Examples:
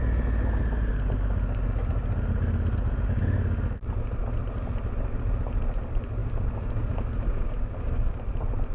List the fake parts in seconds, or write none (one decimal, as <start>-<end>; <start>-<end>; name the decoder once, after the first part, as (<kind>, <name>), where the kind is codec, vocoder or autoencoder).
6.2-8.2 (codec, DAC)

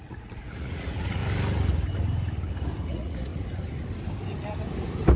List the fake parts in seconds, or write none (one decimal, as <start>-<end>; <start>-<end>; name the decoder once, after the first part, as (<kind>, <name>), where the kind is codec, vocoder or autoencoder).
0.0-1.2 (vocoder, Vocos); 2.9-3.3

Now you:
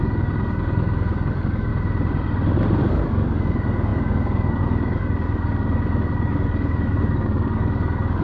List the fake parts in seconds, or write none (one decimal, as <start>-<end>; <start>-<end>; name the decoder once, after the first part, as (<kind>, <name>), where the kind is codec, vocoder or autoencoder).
0.0-1.7 (codec, DAC); 2.8-8.2